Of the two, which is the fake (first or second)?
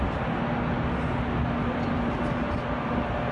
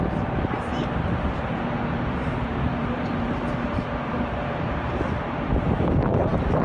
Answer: second